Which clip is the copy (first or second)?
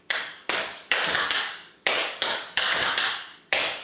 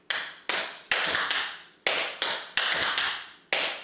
first